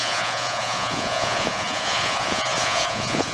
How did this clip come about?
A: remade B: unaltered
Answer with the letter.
A